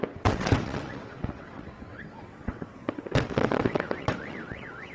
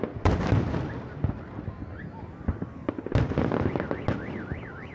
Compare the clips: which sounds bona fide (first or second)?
second